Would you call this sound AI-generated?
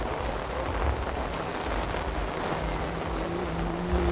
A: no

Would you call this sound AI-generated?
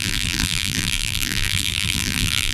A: yes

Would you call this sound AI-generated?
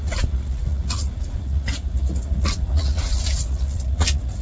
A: yes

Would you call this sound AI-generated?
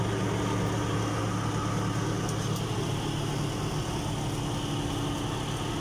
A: no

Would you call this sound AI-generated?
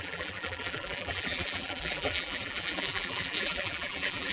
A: yes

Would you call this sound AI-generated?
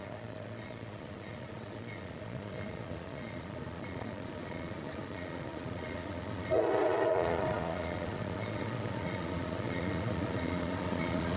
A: yes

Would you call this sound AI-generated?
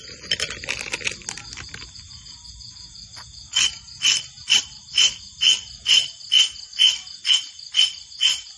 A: no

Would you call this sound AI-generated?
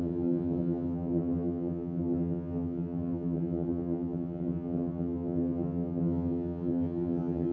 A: yes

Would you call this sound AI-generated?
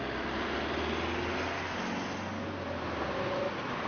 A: no